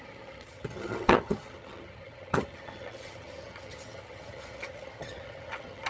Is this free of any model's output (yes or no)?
no